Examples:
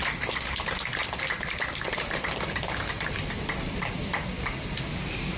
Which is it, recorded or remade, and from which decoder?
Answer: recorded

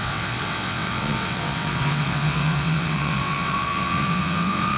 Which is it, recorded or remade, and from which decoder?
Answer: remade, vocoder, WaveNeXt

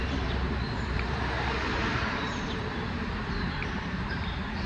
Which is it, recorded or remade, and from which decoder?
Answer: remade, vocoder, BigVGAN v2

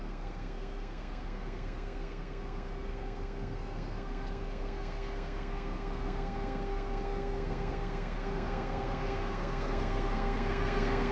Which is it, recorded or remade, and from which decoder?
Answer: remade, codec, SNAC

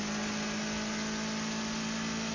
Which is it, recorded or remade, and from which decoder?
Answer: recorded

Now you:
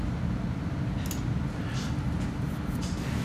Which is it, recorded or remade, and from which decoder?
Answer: recorded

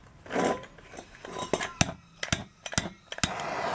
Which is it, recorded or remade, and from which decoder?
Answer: recorded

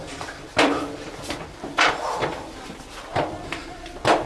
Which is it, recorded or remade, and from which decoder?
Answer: remade, vocoder, BigVGAN v2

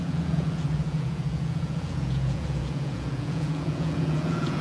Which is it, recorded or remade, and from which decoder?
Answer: remade, vocoder, Vocos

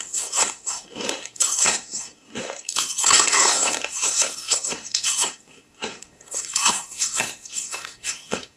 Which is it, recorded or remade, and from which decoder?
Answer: remade, codec, SNAC